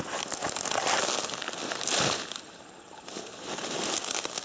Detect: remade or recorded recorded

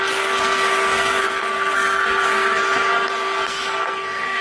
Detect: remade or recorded remade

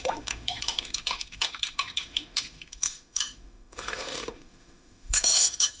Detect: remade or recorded remade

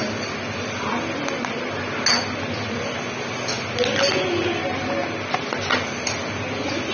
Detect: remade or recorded recorded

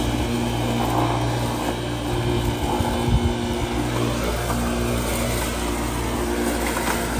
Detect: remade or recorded recorded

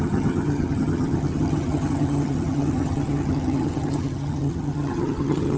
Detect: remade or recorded remade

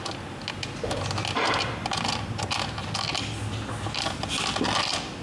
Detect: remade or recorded recorded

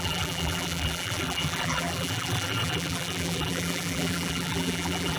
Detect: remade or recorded remade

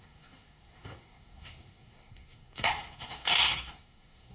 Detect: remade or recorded remade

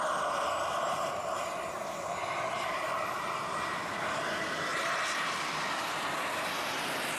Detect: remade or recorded recorded